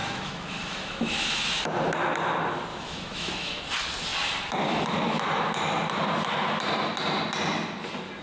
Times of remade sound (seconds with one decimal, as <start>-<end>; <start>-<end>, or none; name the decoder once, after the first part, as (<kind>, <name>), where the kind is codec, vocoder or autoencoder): 0.0-1.6 (autoencoder, DAC-VAE); 2.7-3.6